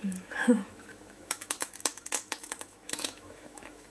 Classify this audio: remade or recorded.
remade